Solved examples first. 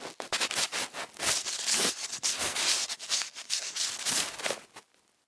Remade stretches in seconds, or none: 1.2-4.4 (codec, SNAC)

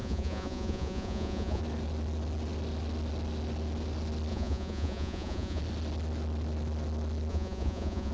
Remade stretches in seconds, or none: 0.0-1.6 (vocoder, Vocos); 4.3-5.6; 7.3-8.1